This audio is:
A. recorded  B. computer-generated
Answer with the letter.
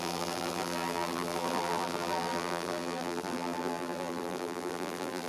B